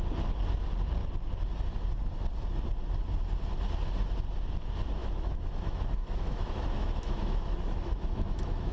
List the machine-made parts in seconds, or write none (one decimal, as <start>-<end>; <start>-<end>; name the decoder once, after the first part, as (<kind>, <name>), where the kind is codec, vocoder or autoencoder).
5.0-8.7 (autoencoder, DAC-VAE)